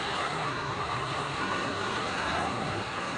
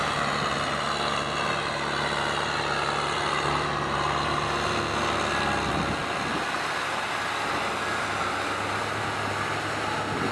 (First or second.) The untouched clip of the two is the second